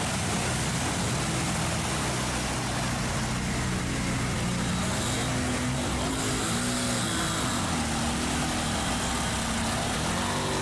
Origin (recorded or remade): recorded